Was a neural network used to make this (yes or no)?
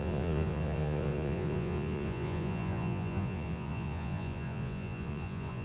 yes